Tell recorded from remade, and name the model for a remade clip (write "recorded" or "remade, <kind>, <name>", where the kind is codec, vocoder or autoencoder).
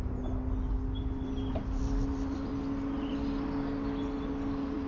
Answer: recorded